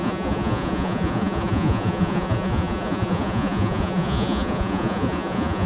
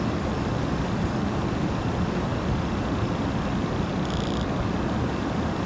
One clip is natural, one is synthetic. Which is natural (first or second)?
second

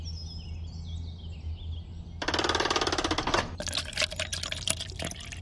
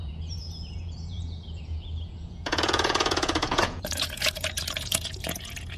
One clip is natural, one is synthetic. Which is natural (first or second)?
first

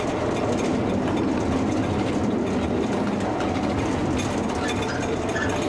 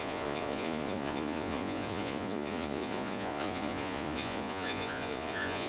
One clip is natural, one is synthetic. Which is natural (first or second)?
first